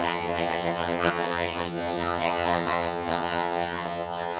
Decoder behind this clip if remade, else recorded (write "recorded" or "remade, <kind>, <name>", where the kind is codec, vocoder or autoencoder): remade, vocoder, HiFi-GAN